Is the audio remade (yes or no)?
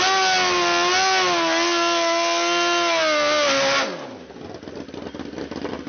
no